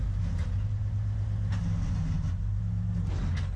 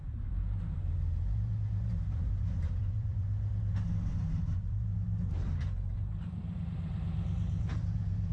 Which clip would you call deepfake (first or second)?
second